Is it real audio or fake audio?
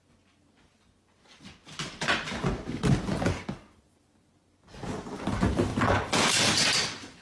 real